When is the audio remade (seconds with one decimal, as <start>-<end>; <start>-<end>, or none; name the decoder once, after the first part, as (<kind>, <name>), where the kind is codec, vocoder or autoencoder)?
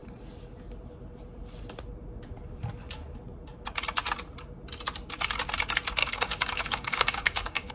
6.0-7.7 (codec, DAC)